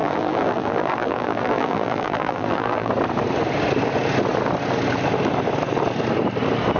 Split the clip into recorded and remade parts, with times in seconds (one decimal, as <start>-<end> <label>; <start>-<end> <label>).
0.0-2.9 remade; 2.9-6.8 recorded